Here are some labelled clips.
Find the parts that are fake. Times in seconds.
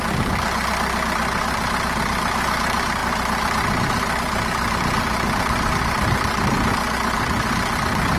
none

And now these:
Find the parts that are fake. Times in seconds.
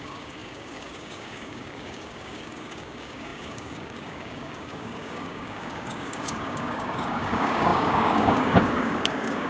0.0-9.5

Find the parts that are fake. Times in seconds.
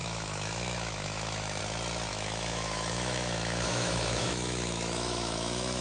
0.0-1.6; 2.1-5.8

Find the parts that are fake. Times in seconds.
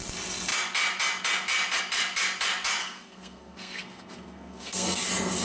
2.8-5.0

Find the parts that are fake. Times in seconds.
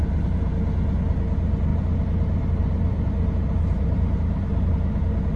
1.7-4.7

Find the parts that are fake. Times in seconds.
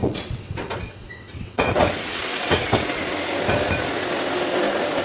0.0-3.0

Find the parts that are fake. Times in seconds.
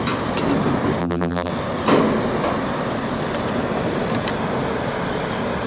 1.0-1.5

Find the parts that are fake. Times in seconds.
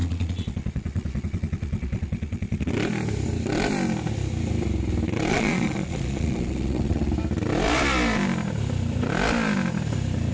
0.0-2.7; 5.3-7.1